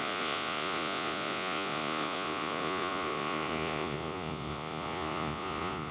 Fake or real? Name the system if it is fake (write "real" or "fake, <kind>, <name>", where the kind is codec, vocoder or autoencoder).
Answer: fake, vocoder, Vocos